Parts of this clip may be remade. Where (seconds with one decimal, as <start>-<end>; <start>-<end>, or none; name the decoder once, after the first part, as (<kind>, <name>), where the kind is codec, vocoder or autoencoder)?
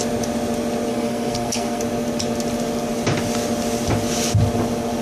0.9-1.8 (codec, SNAC)